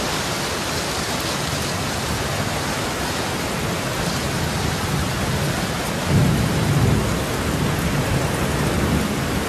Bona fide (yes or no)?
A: yes